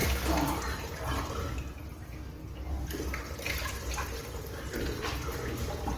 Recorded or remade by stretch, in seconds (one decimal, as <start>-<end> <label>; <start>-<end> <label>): 0.0-6.0 recorded